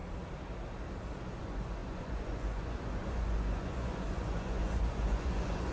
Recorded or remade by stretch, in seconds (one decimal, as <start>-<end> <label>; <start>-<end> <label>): 0.0-1.4 recorded; 1.4-5.7 remade